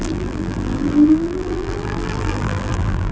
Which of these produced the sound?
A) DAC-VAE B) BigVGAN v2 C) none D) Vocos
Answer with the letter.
B